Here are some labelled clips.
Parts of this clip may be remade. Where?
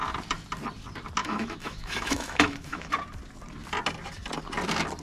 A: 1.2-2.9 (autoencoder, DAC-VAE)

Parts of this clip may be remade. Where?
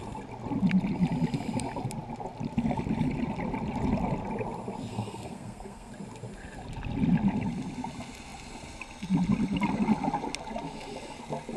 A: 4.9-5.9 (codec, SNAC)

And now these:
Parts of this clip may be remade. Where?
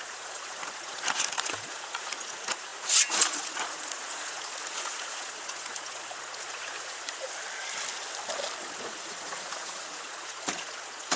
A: 0.0-7.4 (vocoder, Vocos); 8.6-11.2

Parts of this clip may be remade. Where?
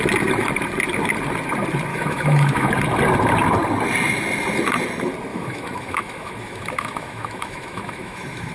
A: 1.9-2.7 (autoencoder, DAC-VAE); 5.3-8.5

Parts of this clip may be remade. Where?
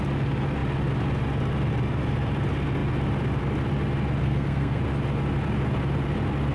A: 4.2-4.8 (codec, SNAC)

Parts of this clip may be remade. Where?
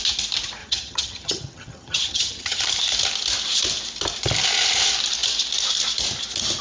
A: 0.6-2.6 (vocoder, HiFi-GAN)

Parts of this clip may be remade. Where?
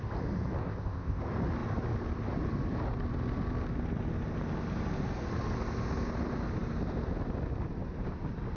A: 0.6-1.2 (codec, ZipCodec)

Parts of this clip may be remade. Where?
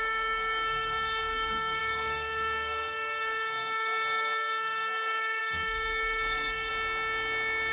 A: 0.0-6.7 (codec, SNAC)